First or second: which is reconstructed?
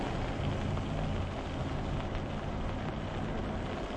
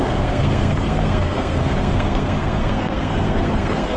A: second